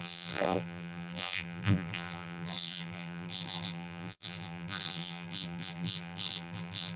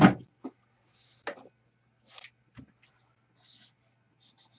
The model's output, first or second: first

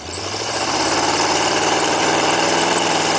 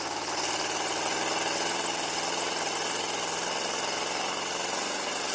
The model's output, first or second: first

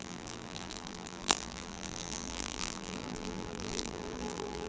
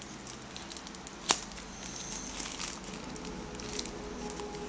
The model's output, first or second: first